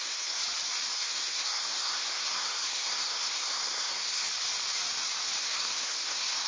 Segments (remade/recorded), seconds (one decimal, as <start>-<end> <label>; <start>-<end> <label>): 0.0-0.4 remade; 0.4-0.9 recorded; 0.9-4.2 remade; 4.2-5.4 recorded; 5.4-6.5 remade